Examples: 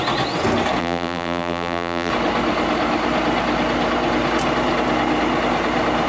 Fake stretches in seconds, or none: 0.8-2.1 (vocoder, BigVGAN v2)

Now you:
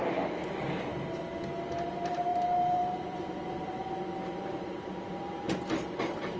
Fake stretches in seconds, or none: 2.3-6.4 (vocoder, BigVGAN v2)

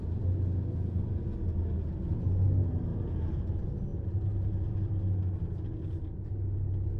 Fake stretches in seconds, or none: 2.9-3.5 (vocoder, BigVGAN v2); 3.9-4.9